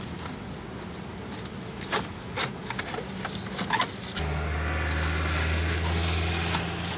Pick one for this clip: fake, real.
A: real